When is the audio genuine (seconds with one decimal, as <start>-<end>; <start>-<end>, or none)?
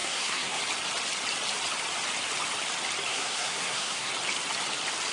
0.6-3.1; 4.1-5.1